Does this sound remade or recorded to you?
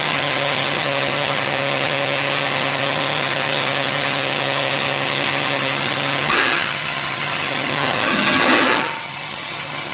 remade